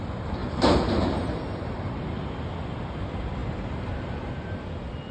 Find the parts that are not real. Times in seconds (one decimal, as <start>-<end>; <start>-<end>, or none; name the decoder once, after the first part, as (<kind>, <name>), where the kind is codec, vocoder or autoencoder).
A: 0.4-2.3 (vocoder, BigVGAN v2); 3.4-5.1